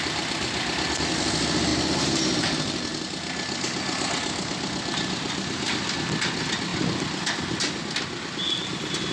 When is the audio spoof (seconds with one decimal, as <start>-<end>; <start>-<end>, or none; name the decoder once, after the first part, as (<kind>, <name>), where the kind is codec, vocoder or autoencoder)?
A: none